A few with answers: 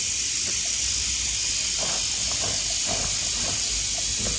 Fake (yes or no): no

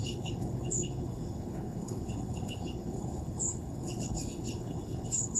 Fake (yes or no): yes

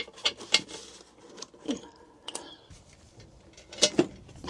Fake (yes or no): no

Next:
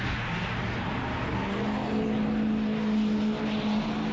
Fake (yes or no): no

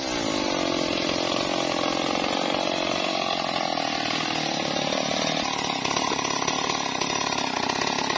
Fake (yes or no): no